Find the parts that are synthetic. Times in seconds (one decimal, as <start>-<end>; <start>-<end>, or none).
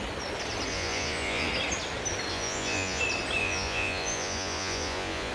0.7-1.5; 2.3-3.0; 3.4-5.3